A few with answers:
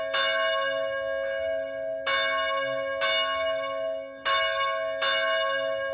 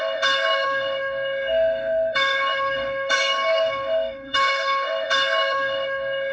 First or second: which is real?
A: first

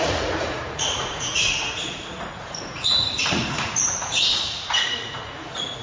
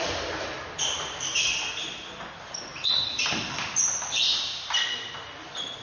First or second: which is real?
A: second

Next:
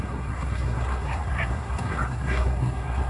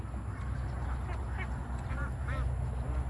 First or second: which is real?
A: second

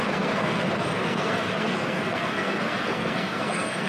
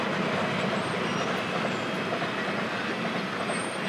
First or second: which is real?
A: second